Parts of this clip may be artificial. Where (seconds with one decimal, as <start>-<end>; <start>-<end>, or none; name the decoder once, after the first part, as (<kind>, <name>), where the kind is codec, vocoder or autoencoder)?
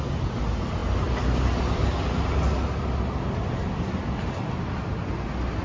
none